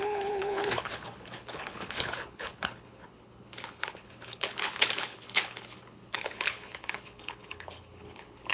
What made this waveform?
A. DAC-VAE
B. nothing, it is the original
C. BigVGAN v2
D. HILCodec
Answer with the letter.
D